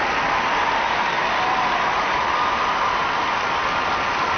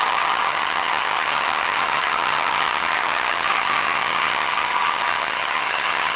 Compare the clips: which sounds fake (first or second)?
second